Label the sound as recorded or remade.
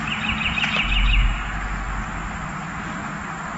recorded